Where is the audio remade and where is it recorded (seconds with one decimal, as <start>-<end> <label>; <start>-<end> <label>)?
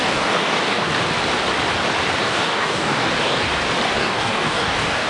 0.0-0.9 remade; 0.9-2.2 recorded; 2.2-3.6 remade; 3.6-4.0 recorded; 4.0-5.1 remade